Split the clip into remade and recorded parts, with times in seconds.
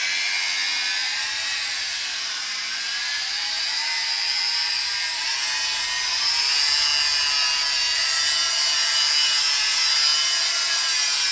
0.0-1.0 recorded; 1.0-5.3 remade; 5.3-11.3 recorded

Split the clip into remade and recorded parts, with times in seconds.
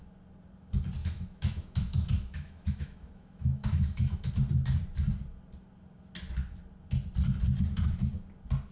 0.0-1.0 recorded; 1.0-4.3 remade; 4.3-8.7 recorded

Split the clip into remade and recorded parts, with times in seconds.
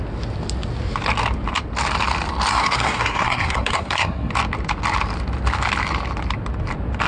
0.0-2.5 recorded; 2.5-4.3 remade; 4.3-7.1 recorded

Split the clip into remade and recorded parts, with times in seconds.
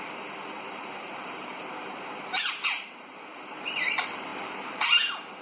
0.0-1.5 remade; 1.5-2.3 recorded; 2.3-5.4 remade